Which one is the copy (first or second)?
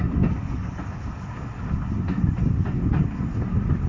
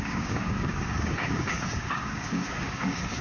second